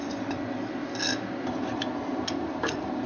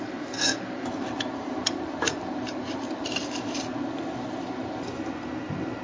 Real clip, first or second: first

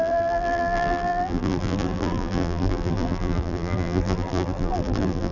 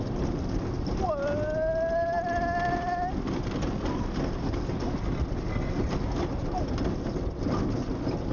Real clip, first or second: second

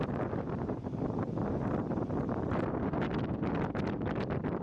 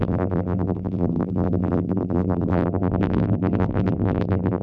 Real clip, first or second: first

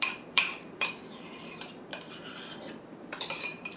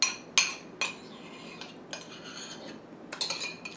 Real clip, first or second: second